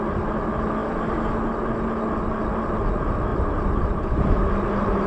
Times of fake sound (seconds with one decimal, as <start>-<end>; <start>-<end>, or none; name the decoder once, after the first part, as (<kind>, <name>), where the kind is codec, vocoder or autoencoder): 3.3-4.5 (vocoder, BigVGAN v2)